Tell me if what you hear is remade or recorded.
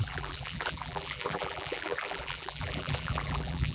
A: remade